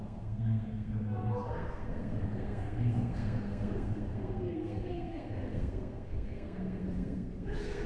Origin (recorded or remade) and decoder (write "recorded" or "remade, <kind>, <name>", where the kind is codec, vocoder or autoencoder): remade, codec, SNAC